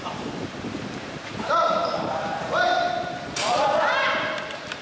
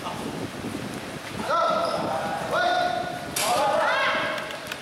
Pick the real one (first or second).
second